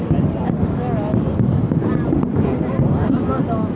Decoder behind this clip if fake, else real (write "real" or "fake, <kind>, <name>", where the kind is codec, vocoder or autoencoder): real